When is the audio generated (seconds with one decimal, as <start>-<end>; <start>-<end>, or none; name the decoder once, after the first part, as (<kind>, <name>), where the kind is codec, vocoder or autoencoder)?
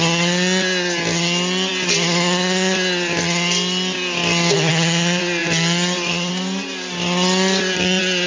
none